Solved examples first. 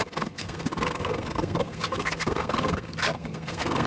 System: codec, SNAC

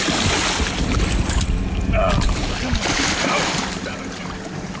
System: none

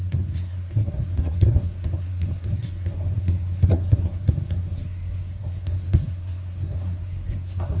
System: codec, SNAC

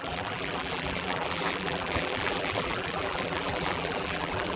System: vocoder, BigVGAN v2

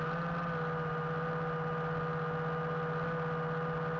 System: none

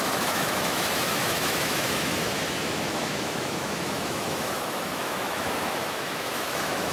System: autoencoder, DAC-VAE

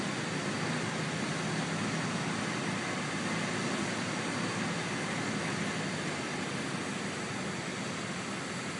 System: none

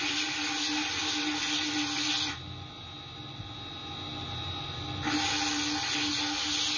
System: none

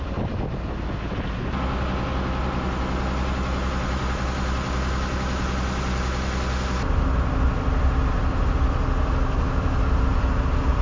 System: none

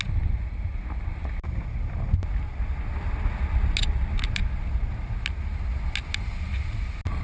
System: none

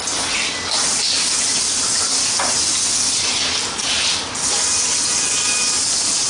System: none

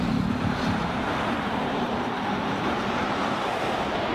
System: vocoder, BigVGAN v2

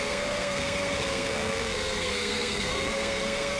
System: codec, SNAC